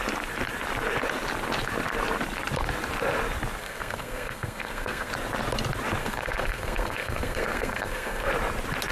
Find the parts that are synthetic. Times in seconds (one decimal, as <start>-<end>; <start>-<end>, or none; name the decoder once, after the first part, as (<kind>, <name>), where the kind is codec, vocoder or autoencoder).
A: 3.6-5.1 (codec, SNAC); 6.0-8.3